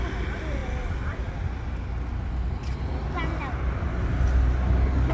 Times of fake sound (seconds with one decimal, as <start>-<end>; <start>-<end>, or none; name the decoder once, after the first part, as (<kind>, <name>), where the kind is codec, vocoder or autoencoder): none